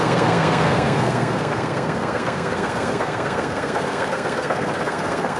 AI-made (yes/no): yes